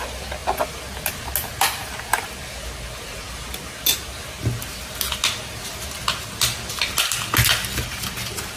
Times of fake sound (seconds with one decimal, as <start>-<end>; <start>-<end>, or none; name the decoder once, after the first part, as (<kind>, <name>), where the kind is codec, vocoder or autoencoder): none